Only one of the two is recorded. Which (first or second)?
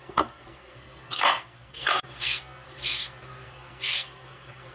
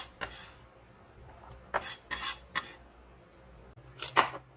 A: second